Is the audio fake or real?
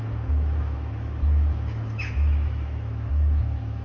fake